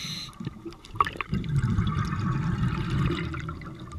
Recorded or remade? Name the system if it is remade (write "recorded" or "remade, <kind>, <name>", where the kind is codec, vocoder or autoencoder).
recorded